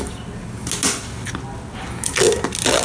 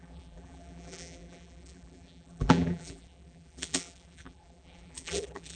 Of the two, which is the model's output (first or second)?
second